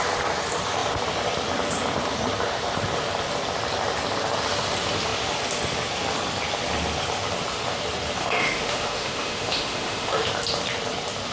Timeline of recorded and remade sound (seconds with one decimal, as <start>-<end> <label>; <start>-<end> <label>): 0.0-8.2 recorded; 8.2-10.3 remade; 10.3-11.3 recorded